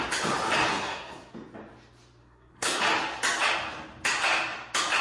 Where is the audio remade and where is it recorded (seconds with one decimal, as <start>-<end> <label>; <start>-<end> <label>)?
0.0-0.7 recorded; 0.7-1.3 remade; 1.3-2.2 recorded; 2.2-2.8 remade; 2.8-5.0 recorded